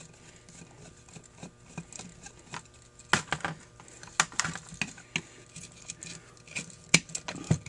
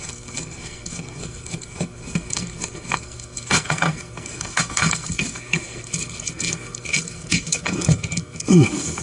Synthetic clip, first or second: second